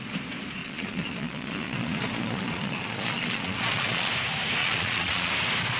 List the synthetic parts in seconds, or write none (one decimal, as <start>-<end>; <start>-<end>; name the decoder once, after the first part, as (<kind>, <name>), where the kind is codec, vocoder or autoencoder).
0.6-4.1 (vocoder, Vocos); 4.6-5.3

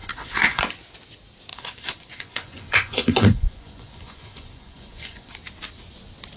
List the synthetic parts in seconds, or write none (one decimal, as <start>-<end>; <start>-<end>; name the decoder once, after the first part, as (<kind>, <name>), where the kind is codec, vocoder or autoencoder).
0.0-0.8 (vocoder, Vocos); 1.5-5.3

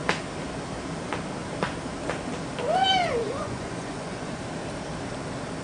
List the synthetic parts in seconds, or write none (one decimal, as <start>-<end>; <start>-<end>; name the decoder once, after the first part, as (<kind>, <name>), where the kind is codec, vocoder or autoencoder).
3.2-4.4 (vocoder, Vocos)

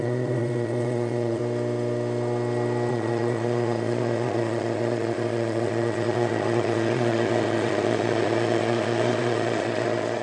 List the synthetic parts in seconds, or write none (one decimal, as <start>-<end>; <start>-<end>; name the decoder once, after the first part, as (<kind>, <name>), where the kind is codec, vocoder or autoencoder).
0.0-1.4 (vocoder, Vocos); 2.9-10.2

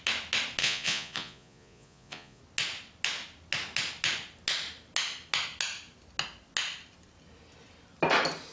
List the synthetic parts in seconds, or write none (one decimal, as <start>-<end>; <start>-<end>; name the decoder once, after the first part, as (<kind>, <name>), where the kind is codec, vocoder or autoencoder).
0.6-2.4 (vocoder, Vocos)

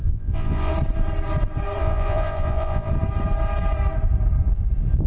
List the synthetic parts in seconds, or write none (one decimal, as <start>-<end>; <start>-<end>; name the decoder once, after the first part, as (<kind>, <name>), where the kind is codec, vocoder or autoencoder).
0.0-0.7 (vocoder, Vocos); 1.8-2.9

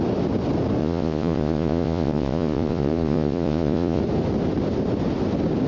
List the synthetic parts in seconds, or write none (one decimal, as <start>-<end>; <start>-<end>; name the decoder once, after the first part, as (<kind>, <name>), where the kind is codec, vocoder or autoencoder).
0.8-4.0 (vocoder, Vocos)